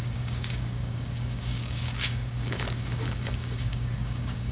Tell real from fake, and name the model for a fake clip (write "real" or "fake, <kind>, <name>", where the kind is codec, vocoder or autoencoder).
fake, codec, DAC